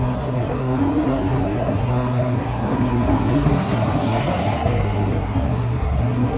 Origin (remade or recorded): remade